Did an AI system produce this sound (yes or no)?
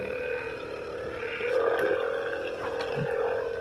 no